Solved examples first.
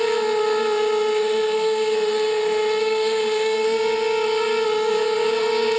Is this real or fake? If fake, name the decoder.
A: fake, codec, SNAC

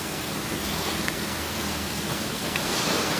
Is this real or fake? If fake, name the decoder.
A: fake, codec, SNAC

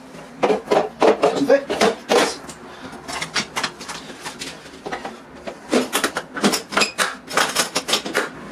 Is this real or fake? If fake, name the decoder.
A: real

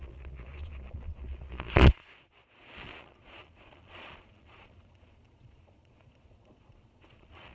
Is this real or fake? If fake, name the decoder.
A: fake, vocoder, Vocos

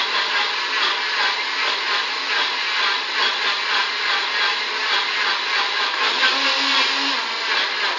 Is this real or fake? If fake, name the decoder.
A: real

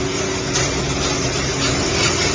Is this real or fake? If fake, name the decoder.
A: real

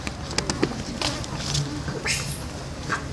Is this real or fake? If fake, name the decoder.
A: real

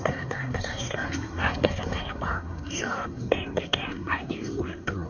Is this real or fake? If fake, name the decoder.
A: fake, codec, SNAC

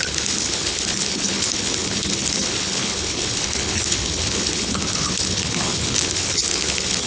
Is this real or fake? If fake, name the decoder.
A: fake, codec, HILCodec